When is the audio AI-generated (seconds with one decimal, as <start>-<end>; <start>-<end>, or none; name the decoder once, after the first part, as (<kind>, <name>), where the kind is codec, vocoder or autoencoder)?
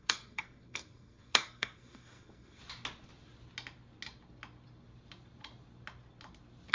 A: 0.0-2.6 (codec, SNAC)